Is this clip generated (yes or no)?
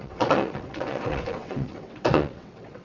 yes